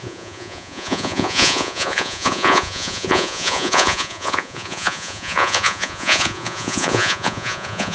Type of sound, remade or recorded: remade